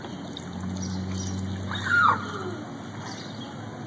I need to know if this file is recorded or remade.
recorded